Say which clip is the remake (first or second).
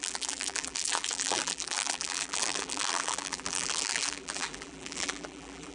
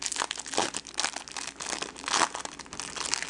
first